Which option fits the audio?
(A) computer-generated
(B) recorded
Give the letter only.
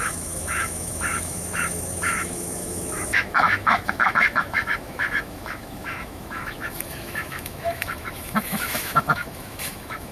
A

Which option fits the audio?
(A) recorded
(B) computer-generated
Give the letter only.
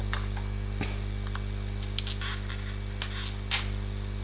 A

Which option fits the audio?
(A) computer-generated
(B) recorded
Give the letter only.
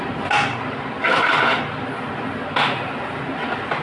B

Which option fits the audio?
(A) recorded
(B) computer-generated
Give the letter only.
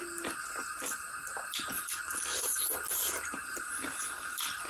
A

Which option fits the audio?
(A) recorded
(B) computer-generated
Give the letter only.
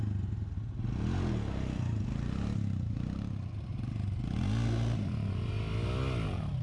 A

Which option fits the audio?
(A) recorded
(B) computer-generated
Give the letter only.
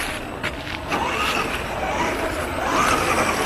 A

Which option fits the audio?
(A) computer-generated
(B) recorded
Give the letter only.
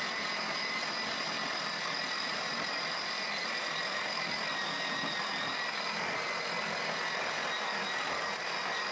B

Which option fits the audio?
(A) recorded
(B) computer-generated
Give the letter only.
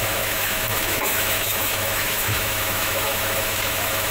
B